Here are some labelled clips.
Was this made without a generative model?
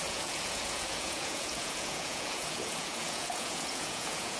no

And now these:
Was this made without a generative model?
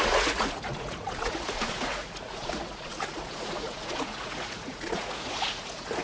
no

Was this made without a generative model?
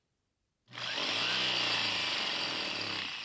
yes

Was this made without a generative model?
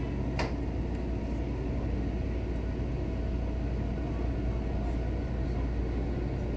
yes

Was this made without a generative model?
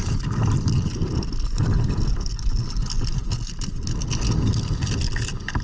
yes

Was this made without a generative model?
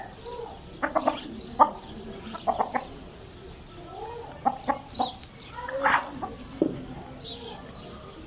yes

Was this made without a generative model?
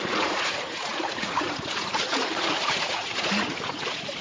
no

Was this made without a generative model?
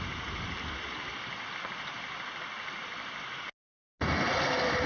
yes